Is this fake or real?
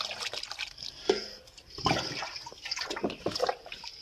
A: real